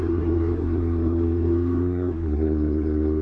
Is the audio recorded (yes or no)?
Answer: no